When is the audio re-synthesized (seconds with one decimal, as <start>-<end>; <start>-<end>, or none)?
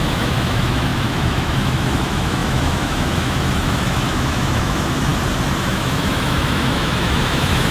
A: 0.0-5.1; 5.6-7.7